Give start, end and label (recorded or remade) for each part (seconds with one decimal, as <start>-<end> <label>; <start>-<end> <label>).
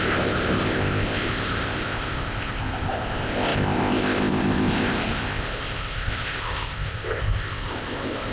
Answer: 0.0-8.3 remade